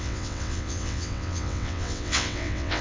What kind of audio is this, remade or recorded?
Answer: remade